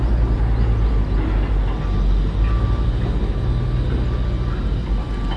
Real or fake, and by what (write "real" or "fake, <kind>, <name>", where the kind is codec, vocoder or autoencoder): real